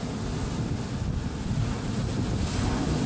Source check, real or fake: real